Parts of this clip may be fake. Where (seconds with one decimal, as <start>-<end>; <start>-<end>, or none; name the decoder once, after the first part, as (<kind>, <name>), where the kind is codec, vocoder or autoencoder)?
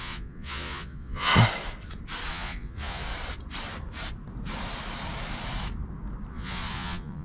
0.0-1.3 (vocoder, Vocos); 2.3-3.1; 6.3-7.2